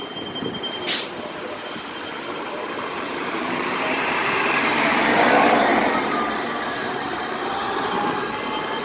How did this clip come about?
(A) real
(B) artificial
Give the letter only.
B